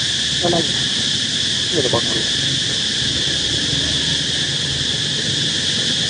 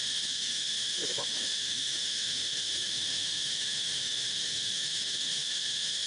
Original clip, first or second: first